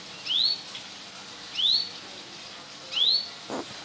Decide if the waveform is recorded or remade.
recorded